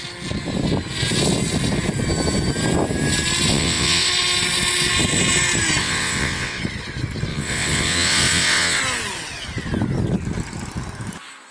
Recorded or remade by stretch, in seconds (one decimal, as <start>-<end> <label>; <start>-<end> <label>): 0.0-3.5 recorded; 3.5-4.1 remade; 4.1-5.8 recorded; 5.8-6.6 remade; 6.6-7.3 recorded; 7.3-8.8 remade; 8.8-11.5 recorded